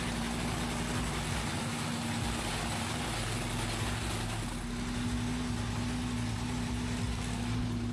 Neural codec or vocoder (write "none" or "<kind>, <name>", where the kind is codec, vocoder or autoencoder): none